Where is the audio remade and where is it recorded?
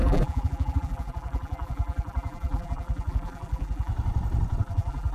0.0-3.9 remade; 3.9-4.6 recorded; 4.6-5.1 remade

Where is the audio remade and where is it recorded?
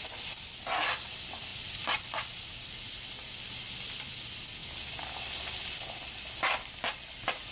0.0-7.5 recorded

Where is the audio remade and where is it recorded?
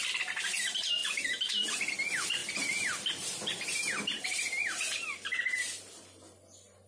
0.0-2.4 recorded; 2.4-5.8 remade; 5.8-6.9 recorded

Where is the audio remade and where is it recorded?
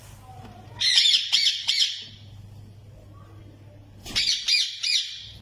0.0-3.8 recorded; 3.8-5.4 remade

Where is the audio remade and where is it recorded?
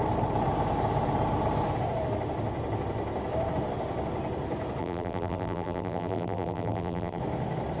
0.0-4.8 recorded; 4.8-7.2 remade; 7.2-7.8 recorded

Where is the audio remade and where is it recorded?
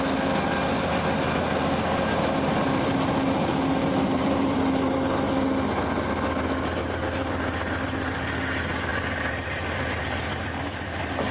0.0-3.8 recorded; 3.8-4.6 remade; 4.6-8.9 recorded; 8.9-10.2 remade; 10.2-11.3 recorded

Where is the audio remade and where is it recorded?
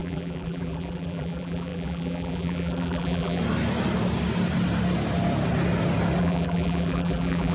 0.0-3.4 remade; 3.4-6.2 recorded; 6.2-7.5 remade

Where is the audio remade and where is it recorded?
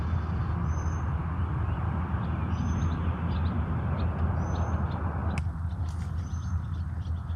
0.0-1.4 recorded; 1.4-2.0 remade; 2.0-7.4 recorded